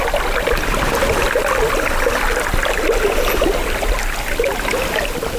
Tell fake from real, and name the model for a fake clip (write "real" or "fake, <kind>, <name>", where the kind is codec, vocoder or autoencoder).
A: real